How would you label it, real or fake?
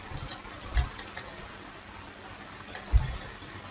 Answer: real